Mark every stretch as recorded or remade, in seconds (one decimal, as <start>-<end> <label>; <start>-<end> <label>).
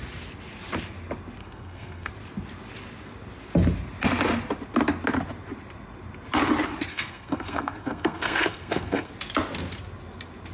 0.0-1.4 recorded; 1.4-2.1 remade; 2.1-6.9 recorded; 6.9-9.1 remade; 9.1-10.5 recorded